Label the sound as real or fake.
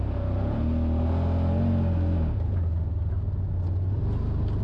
real